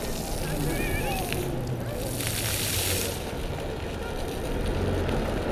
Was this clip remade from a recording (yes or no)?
no